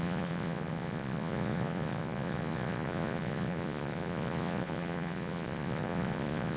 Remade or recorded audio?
remade